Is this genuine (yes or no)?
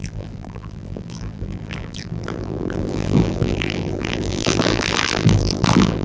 no